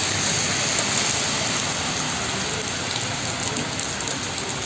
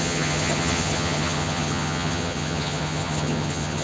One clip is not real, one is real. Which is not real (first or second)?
second